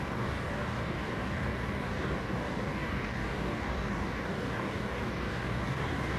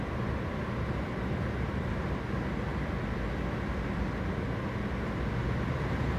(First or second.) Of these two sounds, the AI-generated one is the first